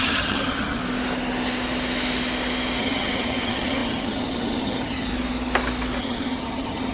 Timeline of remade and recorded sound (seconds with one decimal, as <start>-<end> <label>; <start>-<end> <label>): 0.0-0.8 remade; 0.8-2.8 recorded; 2.8-5.1 remade; 5.1-6.0 recorded; 6.0-6.9 remade